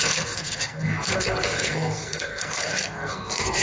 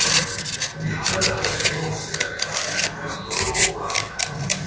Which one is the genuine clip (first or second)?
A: second